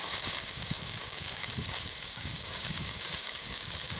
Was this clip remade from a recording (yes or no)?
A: yes